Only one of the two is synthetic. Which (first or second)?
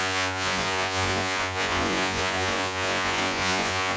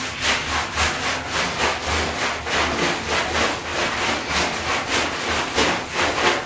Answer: first